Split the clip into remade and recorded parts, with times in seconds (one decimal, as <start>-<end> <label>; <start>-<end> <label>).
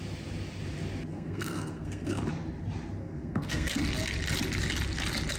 0.0-1.1 recorded; 1.1-2.2 remade; 2.2-3.0 recorded; 3.0-3.8 remade; 3.8-5.4 recorded